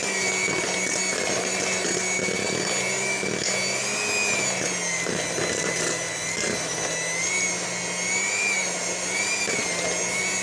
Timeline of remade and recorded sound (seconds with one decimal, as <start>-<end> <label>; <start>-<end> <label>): 0.0-10.4 recorded